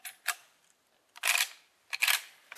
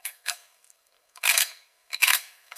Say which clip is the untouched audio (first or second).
first